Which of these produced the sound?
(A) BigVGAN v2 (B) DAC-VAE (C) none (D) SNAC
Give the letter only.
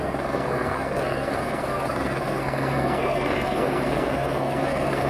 D